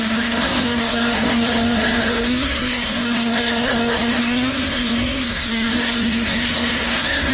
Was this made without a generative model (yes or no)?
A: no